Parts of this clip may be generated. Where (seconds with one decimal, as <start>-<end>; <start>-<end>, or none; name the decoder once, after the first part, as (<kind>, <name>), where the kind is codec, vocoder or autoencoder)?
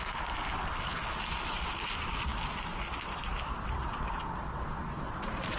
none